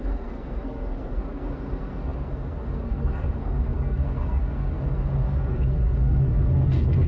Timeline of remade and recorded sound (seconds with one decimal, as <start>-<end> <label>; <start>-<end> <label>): 0.0-7.1 remade